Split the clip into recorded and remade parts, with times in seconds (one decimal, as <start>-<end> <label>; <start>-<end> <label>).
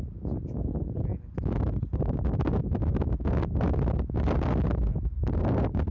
0.0-5.9 recorded